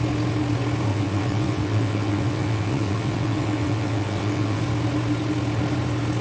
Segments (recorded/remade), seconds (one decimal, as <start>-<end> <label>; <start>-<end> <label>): 0.0-0.9 recorded; 0.9-4.6 remade; 4.6-6.2 recorded